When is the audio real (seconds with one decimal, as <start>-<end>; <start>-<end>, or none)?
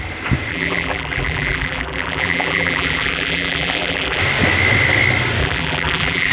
0.0-0.5; 4.2-5.4